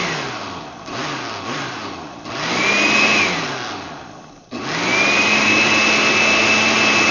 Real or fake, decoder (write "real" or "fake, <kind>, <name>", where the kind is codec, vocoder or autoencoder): real